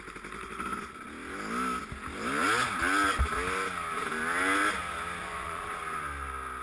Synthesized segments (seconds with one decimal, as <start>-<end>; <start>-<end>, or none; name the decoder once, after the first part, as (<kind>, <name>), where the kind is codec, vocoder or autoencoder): 5.2-5.8 (vocoder, Vocos)